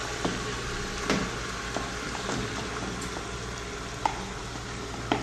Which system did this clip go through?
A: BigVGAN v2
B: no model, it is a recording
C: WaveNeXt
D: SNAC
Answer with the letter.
B